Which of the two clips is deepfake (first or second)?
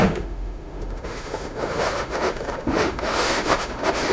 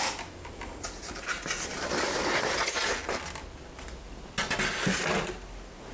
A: first